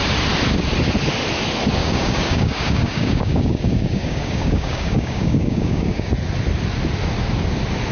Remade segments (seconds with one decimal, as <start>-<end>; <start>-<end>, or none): 1.8-6.1